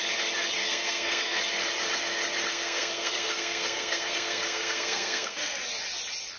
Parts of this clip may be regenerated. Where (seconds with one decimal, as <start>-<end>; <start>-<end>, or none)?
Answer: 0.6-1.4; 2.5-5.6